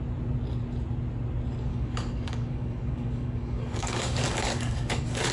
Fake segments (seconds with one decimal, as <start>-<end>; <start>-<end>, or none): 1.7-5.3